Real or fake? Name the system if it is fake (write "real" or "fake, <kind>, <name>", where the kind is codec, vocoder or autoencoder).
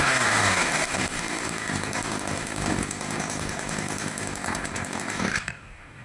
fake, codec, DAC